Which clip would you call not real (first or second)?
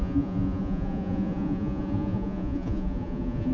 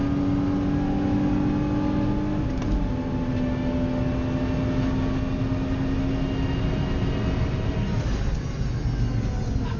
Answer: first